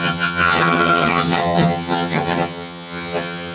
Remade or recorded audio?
remade